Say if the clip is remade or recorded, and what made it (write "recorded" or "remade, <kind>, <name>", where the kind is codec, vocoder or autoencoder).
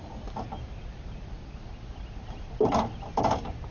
recorded